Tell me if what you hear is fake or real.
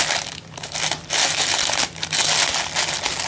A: real